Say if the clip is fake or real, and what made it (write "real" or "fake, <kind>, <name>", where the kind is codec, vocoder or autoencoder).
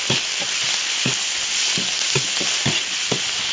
real